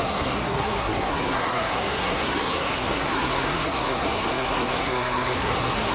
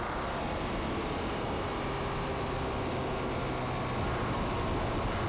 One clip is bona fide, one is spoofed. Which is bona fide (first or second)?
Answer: second